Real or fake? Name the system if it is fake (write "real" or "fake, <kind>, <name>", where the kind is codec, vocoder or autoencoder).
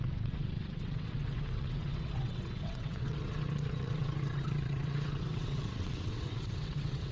fake, vocoder, WaveNeXt